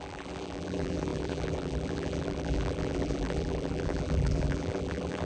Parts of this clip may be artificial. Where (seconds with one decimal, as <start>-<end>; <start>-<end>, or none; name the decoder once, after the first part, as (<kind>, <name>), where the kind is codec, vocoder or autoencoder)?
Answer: 0.0-5.3 (vocoder, BigVGAN v2)